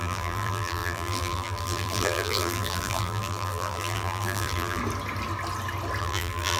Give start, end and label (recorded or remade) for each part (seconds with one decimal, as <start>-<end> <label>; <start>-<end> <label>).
0.0-4.8 remade; 4.8-6.0 recorded; 6.0-6.6 remade